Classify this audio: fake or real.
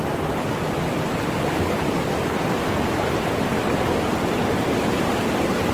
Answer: real